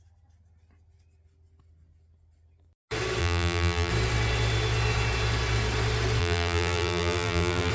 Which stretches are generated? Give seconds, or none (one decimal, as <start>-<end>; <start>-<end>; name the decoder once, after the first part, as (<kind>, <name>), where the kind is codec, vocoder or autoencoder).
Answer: 3.2-3.9 (vocoder, BigVGAN v2); 6.2-7.7